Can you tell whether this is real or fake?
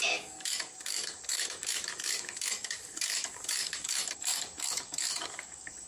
fake